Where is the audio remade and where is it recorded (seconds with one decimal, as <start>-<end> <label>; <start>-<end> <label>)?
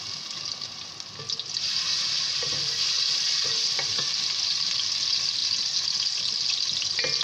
0.0-7.2 recorded